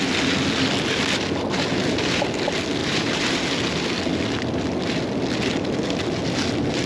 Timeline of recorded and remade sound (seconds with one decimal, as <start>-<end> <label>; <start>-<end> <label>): 0.0-2.8 recorded; 2.8-3.4 remade; 3.4-6.9 recorded